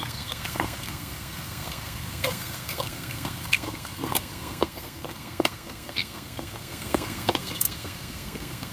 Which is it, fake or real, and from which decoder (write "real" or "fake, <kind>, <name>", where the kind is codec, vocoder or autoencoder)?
fake, codec, SNAC